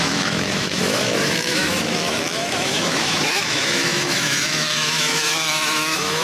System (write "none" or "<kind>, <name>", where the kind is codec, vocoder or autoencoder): autoencoder, DAC-VAE